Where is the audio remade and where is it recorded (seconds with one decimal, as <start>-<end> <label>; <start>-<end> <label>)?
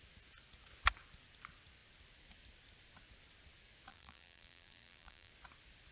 0.0-3.9 recorded; 3.9-5.3 remade; 5.3-5.9 recorded